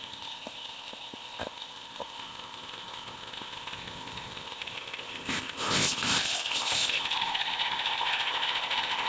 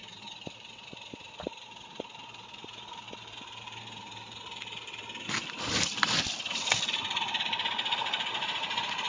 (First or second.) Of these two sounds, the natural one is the second